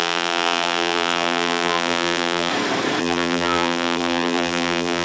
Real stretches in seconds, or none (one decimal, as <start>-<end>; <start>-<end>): 2.5-3.0